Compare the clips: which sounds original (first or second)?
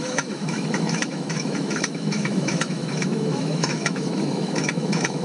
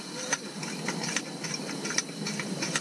second